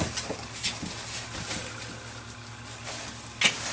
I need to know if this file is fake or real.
real